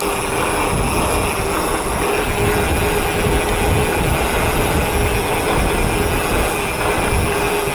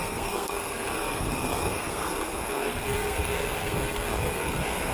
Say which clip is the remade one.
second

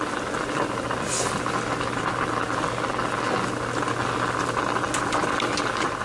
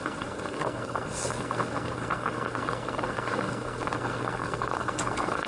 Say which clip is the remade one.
second